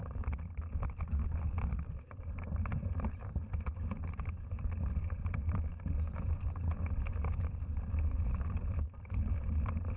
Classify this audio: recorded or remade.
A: recorded